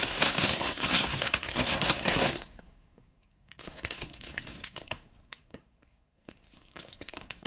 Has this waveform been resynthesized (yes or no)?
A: yes